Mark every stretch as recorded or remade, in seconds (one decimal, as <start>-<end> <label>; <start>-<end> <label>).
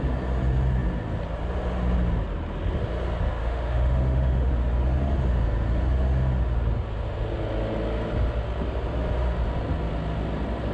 0.0-3.4 recorded; 3.4-4.5 remade; 4.5-10.7 recorded